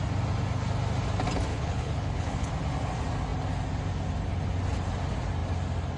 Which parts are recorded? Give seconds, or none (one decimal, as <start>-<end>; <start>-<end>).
0.0-1.5; 2.5-6.0